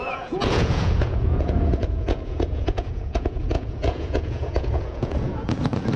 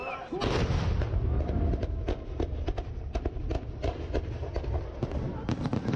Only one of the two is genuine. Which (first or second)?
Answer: second